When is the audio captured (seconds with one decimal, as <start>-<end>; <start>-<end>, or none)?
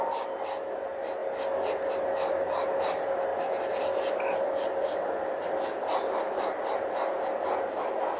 0.0-8.2